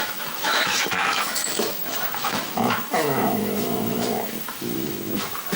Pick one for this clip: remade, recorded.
remade